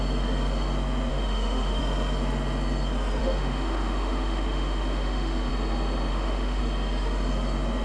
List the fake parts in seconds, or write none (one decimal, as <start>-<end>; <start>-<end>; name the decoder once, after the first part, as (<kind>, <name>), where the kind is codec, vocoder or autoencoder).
1.1-1.8 (autoencoder, DAC-VAE); 3.2-5.5; 6.1-6.6

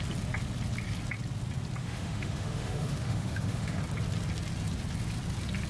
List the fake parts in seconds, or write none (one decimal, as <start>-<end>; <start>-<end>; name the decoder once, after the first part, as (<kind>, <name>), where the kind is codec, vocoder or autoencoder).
1.8-3.8 (autoencoder, DAC-VAE)